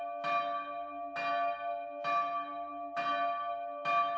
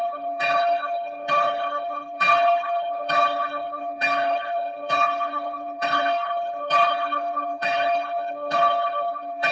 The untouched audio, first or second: first